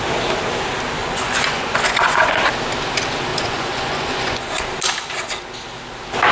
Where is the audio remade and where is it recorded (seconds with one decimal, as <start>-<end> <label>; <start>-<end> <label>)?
0.0-1.0 recorded; 1.0-2.4 remade; 2.4-3.3 recorded; 3.3-4.6 remade; 4.6-6.3 recorded